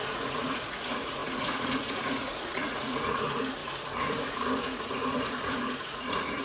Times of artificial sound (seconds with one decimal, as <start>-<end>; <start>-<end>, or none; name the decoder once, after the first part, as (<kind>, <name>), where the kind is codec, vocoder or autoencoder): 0.0-6.4 (vocoder, Vocos)